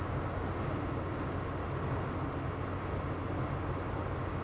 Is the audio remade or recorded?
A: recorded